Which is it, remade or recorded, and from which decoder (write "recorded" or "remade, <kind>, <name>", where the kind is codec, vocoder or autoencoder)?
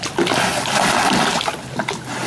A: recorded